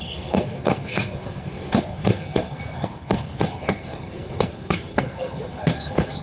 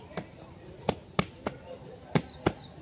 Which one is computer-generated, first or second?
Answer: first